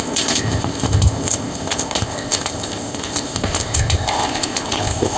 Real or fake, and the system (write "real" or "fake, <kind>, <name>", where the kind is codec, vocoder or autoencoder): fake, codec, ZipCodec